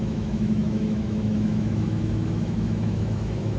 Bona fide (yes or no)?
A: no